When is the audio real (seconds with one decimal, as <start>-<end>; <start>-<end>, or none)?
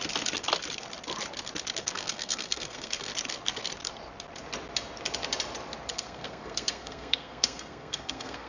0.0-1.8; 3.1-5.9